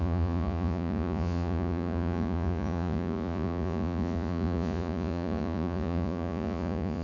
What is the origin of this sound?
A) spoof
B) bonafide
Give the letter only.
A